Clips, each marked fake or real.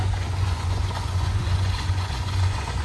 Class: fake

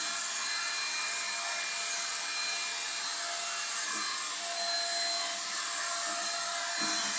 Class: real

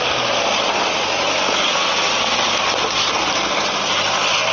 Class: real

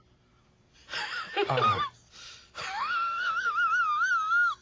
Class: real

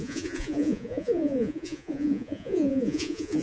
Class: fake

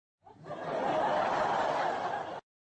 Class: real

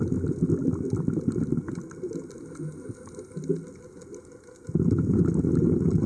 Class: real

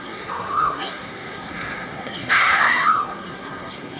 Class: fake